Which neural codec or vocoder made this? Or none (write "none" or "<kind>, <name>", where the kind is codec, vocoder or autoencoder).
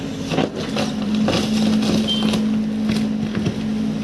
none